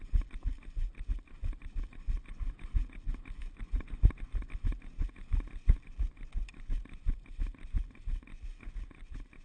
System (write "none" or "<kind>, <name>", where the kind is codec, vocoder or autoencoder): none